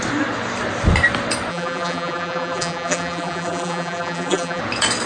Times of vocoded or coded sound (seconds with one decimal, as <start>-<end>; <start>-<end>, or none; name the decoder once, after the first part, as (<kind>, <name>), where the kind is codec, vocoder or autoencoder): 1.5-4.6 (vocoder, BigVGAN v2)